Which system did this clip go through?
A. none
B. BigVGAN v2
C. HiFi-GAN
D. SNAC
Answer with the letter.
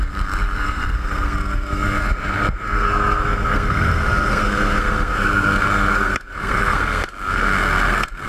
D